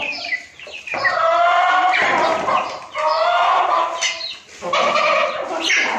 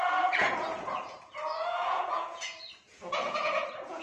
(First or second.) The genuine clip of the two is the first